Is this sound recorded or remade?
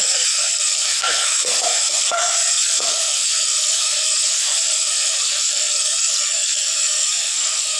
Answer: remade